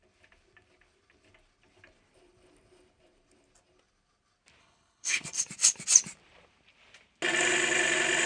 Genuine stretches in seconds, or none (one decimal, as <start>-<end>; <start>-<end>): 0.0-4.6; 5.4-8.3